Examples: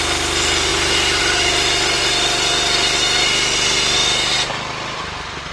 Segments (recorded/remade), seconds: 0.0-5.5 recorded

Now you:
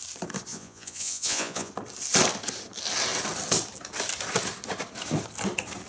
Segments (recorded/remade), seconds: 0.0-0.5 recorded; 0.5-1.7 remade; 1.7-5.9 recorded